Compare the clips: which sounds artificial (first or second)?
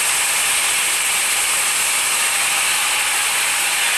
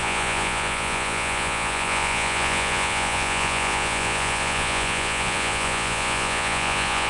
second